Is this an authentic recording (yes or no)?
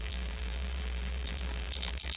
no